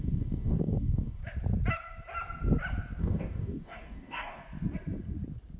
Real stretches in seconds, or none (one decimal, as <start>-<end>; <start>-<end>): 1.2-3.0; 4.4-5.6